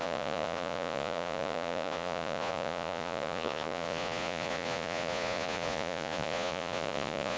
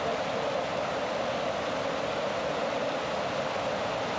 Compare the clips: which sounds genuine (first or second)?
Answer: second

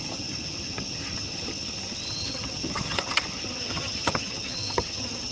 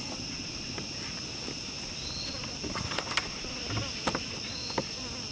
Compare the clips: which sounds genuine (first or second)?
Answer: second